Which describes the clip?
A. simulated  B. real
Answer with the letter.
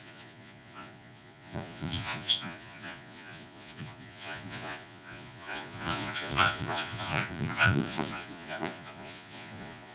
A